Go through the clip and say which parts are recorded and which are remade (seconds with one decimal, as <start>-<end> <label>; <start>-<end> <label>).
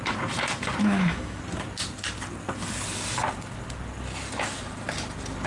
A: 0.0-0.8 recorded; 0.8-1.4 remade; 1.4-5.5 recorded